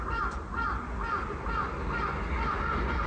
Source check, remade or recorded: recorded